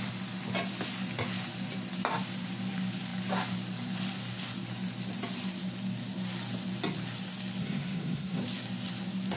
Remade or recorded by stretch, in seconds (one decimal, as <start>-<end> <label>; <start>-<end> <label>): 0.0-7.6 recorded; 7.6-8.4 remade; 8.4-9.4 recorded